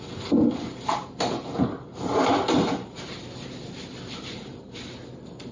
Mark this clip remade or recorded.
recorded